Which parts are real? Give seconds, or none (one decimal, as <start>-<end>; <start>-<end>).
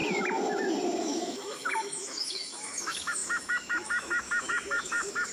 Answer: 0.0-1.0